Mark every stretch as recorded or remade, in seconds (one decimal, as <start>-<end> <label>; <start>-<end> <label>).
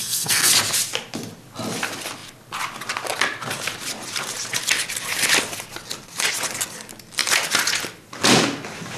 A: 0.0-0.5 remade; 0.5-9.0 recorded